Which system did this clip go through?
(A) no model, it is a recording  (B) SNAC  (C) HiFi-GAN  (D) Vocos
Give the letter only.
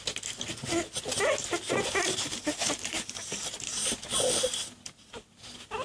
A